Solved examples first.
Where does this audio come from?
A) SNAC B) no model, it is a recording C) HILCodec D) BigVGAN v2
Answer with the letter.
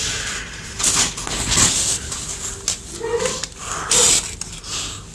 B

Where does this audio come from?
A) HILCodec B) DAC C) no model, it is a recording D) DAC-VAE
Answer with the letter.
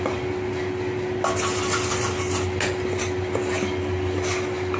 C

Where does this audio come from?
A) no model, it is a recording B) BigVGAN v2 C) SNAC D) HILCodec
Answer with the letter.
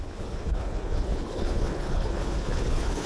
D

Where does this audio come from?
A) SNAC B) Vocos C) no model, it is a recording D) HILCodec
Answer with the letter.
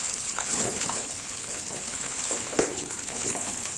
D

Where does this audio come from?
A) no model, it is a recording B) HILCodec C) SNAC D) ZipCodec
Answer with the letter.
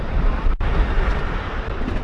A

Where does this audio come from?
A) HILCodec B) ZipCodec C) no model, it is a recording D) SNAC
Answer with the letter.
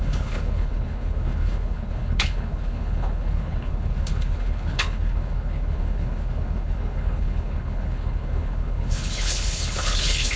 A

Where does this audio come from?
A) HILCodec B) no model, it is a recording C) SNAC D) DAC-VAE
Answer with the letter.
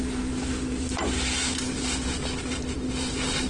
B